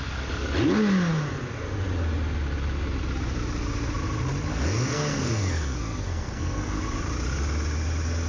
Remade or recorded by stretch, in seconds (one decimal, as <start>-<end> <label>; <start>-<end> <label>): 0.0-4.5 recorded; 4.5-6.8 remade; 6.8-8.3 recorded